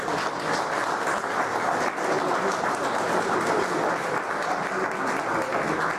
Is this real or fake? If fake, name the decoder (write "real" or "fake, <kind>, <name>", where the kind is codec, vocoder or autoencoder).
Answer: real